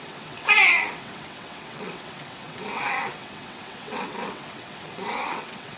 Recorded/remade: remade